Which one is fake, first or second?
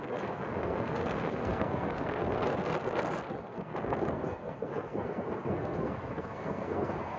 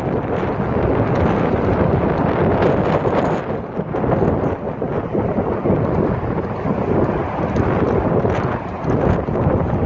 first